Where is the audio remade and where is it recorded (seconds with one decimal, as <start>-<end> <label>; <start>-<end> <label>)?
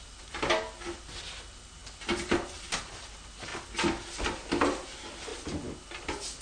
0.0-6.4 recorded